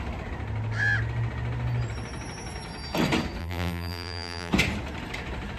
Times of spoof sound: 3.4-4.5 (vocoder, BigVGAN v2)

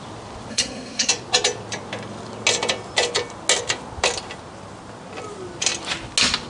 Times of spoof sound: 0.5-1.1 (codec, SNAC)

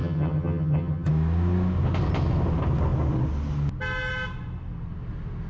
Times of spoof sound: 0.0-1.1 (vocoder, HiFi-GAN)